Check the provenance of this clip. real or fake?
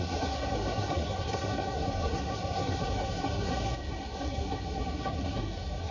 fake